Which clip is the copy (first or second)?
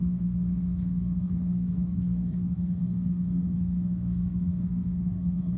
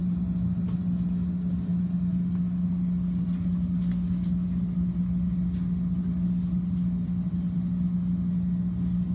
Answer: first